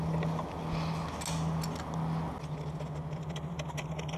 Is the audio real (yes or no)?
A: yes